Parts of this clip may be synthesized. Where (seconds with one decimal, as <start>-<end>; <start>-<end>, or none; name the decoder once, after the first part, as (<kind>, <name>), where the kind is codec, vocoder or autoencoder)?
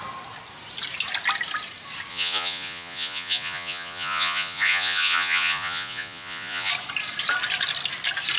2.1-6.7 (vocoder, Vocos)